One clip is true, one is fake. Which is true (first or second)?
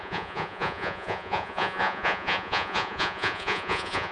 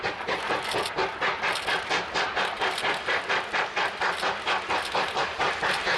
second